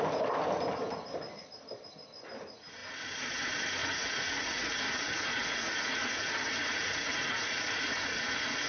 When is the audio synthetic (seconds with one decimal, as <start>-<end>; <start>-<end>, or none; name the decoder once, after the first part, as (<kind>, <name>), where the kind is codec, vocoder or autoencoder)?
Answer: 3.8-8.7 (vocoder, Vocos)